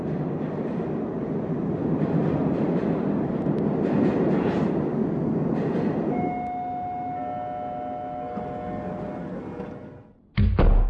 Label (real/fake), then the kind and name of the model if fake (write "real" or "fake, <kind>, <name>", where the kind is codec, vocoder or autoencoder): real